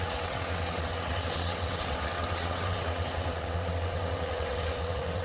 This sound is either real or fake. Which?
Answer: fake